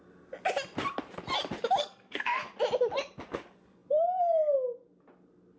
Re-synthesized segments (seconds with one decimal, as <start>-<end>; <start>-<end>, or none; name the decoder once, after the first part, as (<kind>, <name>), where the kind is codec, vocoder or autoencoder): 1.8-2.4 (codec, SNAC)